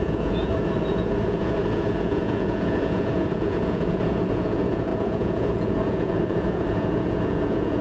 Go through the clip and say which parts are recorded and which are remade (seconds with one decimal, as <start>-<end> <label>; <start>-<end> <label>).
0.0-7.8 remade